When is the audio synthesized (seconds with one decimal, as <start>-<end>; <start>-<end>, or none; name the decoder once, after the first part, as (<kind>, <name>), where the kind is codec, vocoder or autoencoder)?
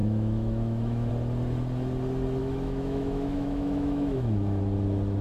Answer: 0.0-1.1 (autoencoder, DAC-VAE); 2.4-4.6